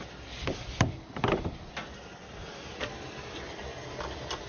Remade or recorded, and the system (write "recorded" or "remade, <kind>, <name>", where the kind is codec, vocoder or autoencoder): recorded